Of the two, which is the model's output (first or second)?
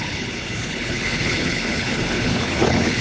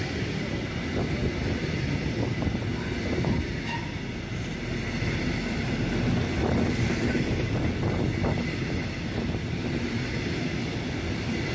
first